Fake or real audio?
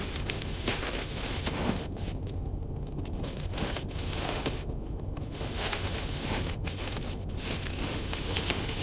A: fake